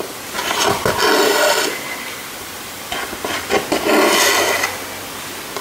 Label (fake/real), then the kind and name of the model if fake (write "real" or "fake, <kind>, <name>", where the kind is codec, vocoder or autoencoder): real